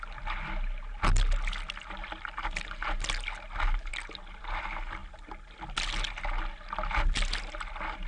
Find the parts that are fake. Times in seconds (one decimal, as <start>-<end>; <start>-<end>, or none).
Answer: none